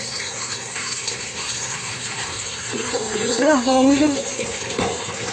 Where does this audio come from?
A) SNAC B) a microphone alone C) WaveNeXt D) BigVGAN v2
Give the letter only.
A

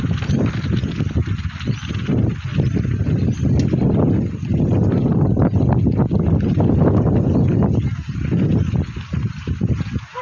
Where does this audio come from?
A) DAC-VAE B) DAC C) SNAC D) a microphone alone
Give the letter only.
D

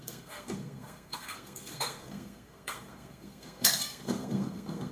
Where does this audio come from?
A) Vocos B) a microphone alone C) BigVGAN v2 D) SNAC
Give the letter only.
D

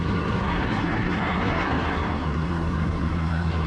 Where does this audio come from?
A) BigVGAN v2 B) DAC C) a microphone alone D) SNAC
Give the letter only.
D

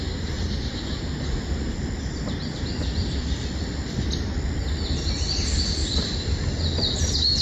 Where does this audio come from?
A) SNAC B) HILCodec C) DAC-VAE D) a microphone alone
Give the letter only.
D